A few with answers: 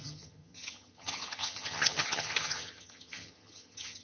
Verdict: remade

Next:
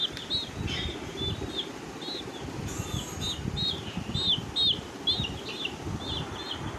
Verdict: recorded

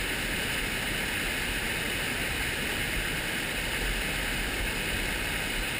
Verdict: recorded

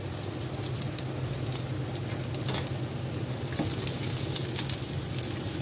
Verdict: recorded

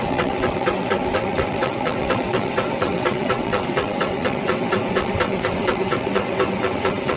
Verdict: remade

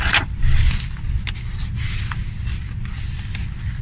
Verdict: recorded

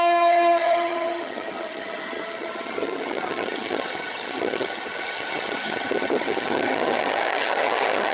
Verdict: remade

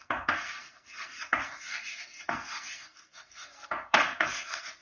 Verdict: remade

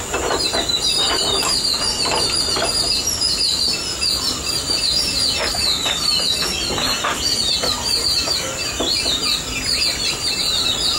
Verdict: recorded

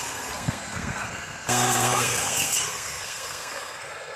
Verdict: remade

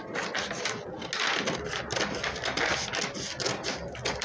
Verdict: recorded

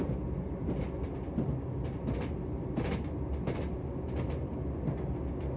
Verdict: recorded